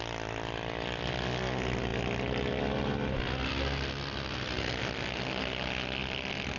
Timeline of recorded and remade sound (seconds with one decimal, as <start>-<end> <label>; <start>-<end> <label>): 0.0-6.6 recorded